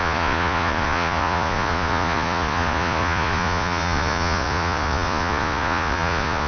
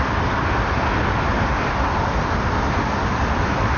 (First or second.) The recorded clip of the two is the second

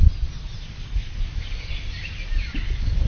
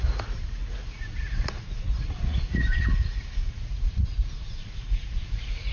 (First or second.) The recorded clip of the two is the first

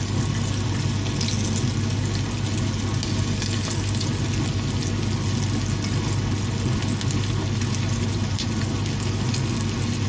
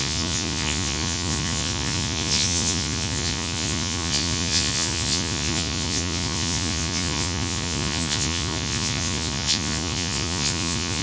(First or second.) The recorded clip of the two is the first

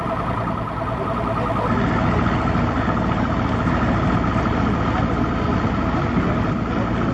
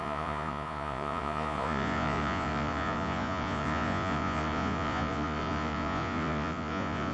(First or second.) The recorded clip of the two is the first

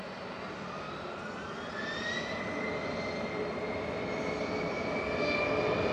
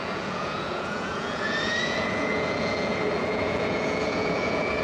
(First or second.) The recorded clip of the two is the first